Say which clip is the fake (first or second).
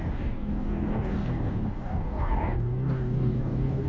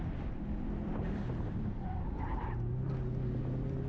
first